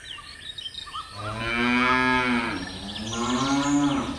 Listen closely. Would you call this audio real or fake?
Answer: real